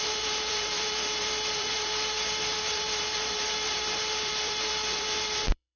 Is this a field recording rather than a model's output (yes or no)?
no